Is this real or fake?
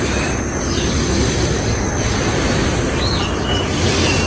fake